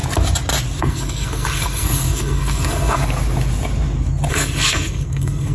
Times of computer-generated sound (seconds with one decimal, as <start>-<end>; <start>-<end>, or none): 0.8-3.0; 4.3-5.5